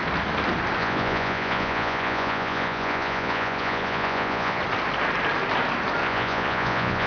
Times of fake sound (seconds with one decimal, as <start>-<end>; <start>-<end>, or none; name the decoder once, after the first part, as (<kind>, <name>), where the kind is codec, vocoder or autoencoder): 0.8-4.6 (vocoder, Vocos); 6.0-7.1